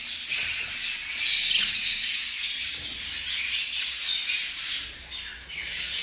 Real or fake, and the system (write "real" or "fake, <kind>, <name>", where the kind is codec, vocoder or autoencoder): real